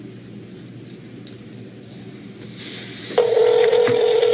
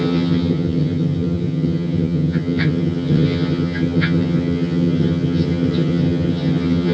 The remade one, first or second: second